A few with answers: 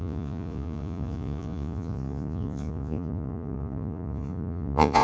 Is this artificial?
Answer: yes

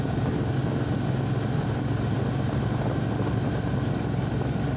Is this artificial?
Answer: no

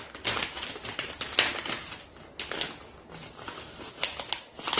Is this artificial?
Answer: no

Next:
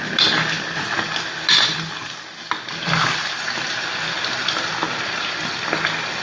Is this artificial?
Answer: no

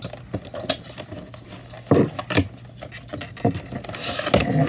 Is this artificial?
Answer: no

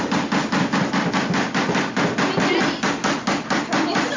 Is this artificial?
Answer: no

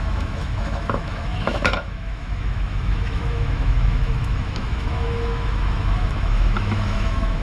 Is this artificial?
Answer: yes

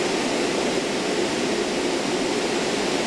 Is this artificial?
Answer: no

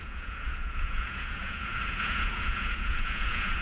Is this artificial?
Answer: yes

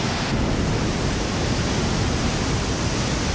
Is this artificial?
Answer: no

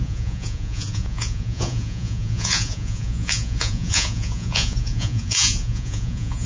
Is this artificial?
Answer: yes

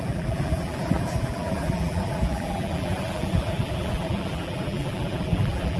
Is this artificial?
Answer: yes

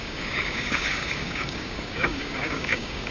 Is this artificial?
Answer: yes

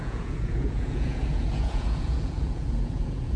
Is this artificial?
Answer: yes